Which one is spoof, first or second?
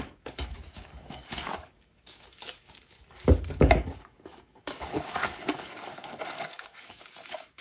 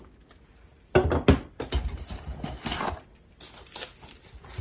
first